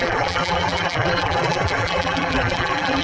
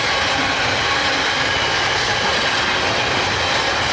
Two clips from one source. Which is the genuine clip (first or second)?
second